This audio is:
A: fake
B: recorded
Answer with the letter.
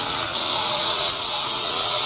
A